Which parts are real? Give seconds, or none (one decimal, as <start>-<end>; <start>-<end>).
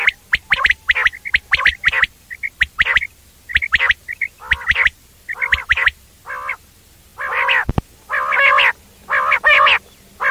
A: 0.0-10.3